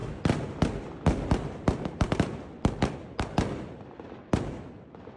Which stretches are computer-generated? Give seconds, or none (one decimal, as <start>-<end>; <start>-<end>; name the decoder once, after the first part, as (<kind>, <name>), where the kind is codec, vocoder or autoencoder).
0.0-2.9 (vocoder, BigVGAN v2)